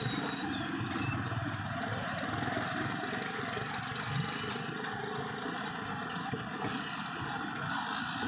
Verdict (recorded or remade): recorded